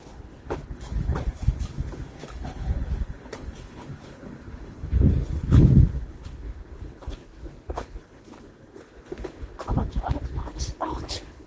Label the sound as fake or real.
fake